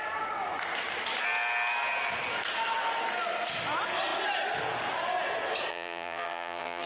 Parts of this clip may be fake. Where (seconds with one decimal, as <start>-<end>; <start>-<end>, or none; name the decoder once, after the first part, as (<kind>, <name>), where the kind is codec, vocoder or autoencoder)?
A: 5.7-6.9 (vocoder, HiFi-GAN)